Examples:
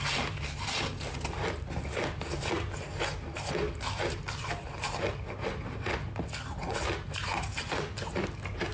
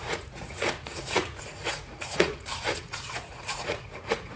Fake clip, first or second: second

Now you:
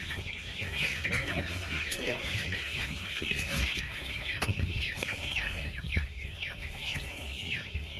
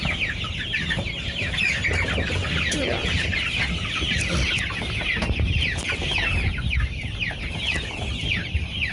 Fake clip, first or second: first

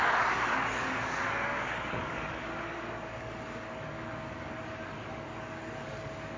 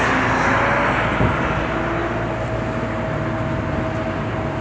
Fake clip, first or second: first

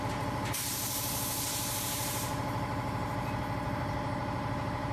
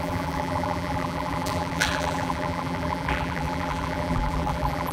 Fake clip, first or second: second